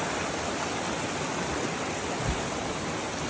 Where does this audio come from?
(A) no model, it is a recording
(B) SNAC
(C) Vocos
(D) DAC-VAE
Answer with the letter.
A